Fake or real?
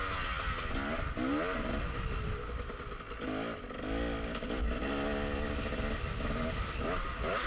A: real